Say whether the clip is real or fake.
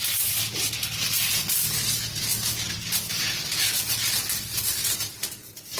real